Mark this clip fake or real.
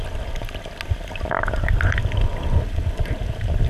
real